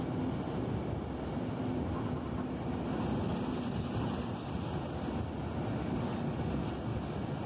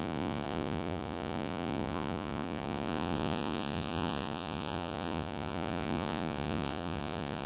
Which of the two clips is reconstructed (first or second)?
second